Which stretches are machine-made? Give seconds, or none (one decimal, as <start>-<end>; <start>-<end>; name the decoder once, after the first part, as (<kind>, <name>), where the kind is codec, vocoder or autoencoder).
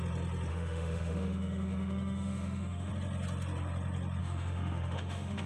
0.5-2.9 (autoencoder, DAC-VAE); 4.2-5.5